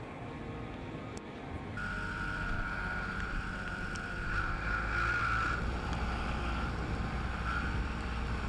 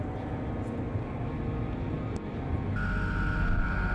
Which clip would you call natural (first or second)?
second